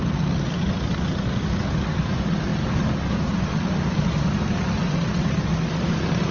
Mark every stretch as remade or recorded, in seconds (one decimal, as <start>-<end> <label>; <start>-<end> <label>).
0.0-6.3 recorded